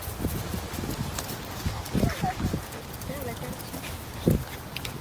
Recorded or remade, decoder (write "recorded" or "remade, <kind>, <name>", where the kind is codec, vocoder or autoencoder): recorded